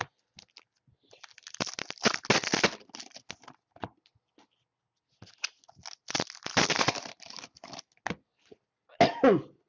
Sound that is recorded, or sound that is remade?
recorded